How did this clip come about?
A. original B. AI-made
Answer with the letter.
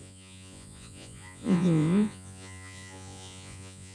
B